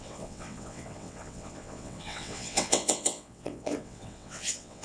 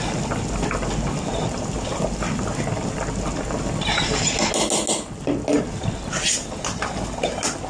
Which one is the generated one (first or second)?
first